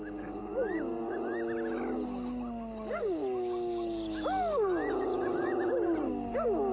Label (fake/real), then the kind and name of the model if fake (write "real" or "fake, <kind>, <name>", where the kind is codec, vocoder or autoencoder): real